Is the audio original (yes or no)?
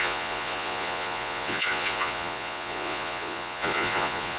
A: no